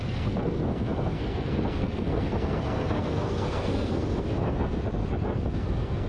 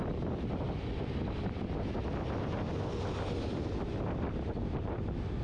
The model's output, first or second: first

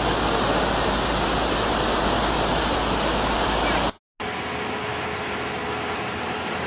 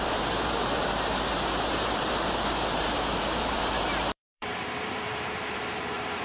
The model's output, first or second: second